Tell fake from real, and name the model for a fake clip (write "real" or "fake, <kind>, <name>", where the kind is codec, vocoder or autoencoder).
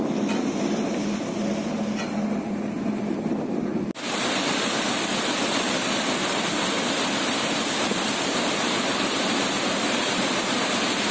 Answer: real